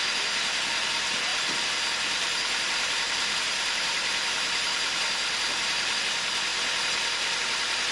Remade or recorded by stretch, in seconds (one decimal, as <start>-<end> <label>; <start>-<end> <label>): 0.0-1.3 recorded; 1.3-6.0 remade; 6.0-7.9 recorded